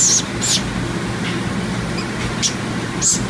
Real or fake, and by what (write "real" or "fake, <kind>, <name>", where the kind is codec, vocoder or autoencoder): real